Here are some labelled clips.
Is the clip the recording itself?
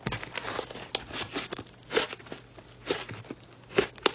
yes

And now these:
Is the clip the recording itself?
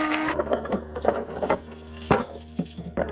no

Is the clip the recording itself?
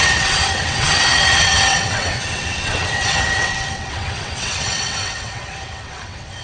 no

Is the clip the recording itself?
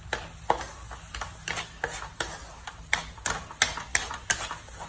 yes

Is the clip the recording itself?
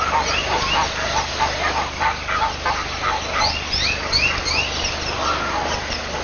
yes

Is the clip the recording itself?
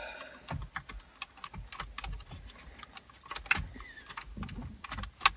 yes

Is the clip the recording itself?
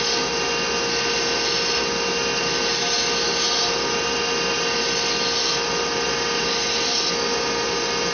yes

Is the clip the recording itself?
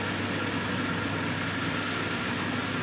yes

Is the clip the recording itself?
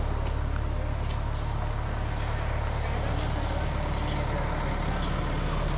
yes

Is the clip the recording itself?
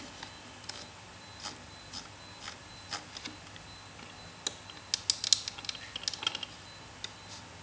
yes